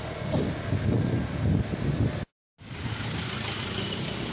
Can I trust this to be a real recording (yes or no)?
yes